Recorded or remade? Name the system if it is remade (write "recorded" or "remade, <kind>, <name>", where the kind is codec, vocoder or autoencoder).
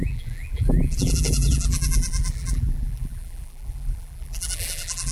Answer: remade, vocoder, BigVGAN v2